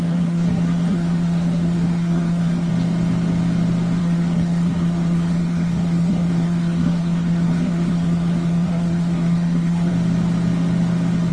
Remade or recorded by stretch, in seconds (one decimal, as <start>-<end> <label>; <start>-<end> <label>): 0.0-2.7 remade; 2.7-4.0 recorded; 4.0-9.9 remade; 9.9-11.3 recorded